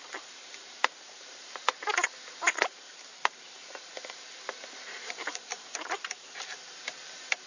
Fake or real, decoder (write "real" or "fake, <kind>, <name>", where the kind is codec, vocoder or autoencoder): fake, vocoder, BigVGAN v2